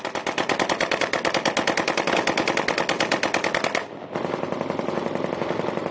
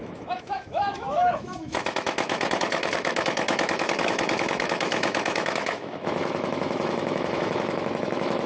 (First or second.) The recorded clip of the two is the first